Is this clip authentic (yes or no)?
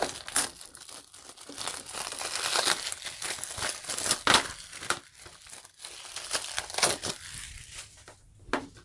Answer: yes